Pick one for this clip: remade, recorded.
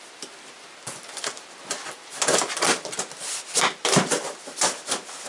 recorded